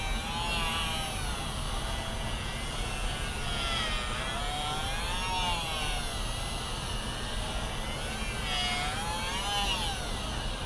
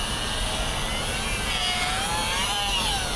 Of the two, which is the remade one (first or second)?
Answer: second